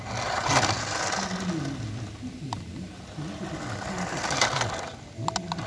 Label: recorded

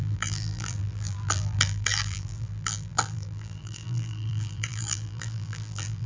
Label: remade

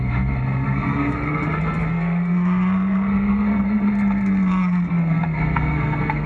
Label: remade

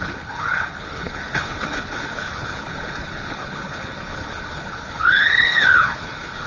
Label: remade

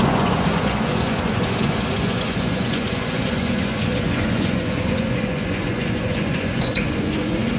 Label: remade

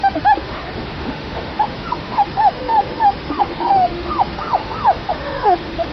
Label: remade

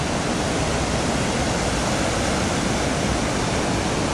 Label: recorded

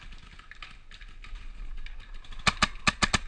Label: recorded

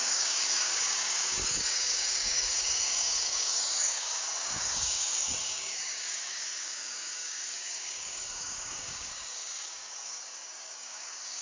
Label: remade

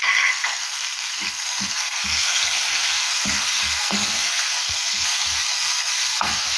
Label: remade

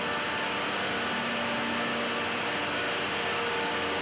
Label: recorded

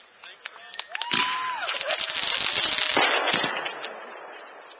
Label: recorded